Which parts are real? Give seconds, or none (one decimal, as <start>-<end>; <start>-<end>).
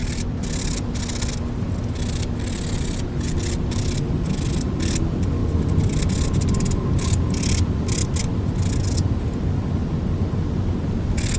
0.0-4.8; 5.4-6.1; 8.0-10.9